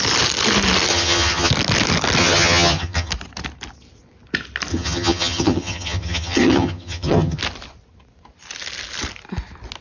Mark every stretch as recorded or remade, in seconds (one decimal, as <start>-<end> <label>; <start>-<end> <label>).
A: 0.0-0.9 recorded; 0.9-1.5 remade; 1.5-2.2 recorded; 2.2-3.1 remade; 3.1-4.7 recorded; 4.7-7.4 remade; 7.4-9.8 recorded